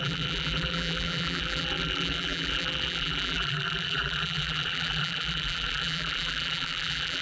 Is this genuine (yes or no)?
no